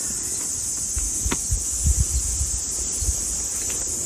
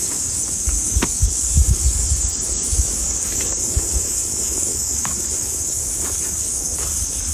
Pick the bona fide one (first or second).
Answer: first